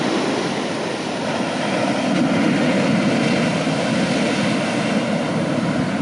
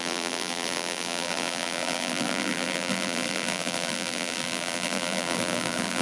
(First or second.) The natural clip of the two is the first